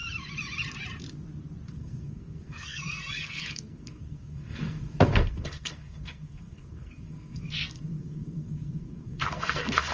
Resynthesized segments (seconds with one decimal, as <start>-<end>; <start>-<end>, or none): 1.7-9.9